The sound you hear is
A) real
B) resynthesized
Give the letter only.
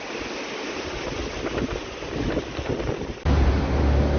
A